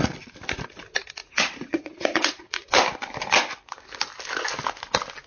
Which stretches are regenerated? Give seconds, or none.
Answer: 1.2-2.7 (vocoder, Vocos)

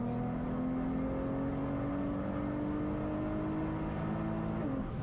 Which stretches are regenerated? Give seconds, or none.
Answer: none

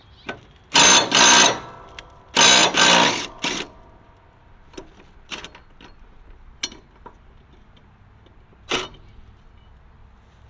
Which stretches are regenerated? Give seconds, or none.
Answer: none

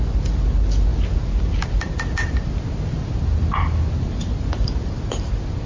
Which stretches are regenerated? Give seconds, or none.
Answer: none

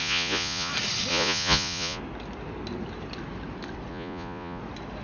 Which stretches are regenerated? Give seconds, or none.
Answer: 0.0-0.7 (vocoder, Vocos); 1.1-2.0; 3.9-4.6